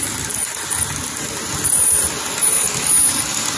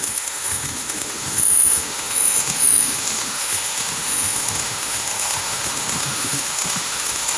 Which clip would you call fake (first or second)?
second